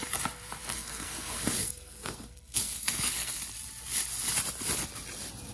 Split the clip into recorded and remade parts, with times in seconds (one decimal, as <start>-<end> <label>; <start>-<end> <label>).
0.0-0.6 recorded; 0.6-3.4 remade; 3.4-5.5 recorded